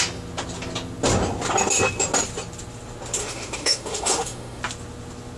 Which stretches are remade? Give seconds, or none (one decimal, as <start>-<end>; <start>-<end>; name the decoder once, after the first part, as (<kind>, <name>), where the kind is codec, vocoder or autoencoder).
3.2-4.6 (autoencoder, DAC-VAE)